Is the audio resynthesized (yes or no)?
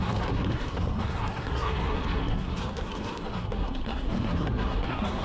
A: yes